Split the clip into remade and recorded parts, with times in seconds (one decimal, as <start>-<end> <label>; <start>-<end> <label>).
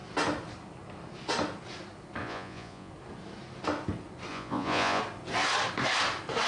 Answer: 0.0-2.2 recorded; 2.2-2.9 remade; 2.9-4.3 recorded; 4.3-5.0 remade; 5.0-6.5 recorded